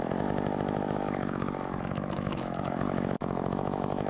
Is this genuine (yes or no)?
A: no